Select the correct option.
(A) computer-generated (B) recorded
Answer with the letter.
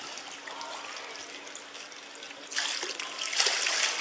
B